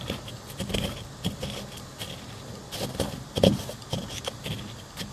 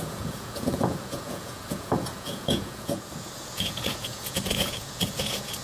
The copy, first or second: second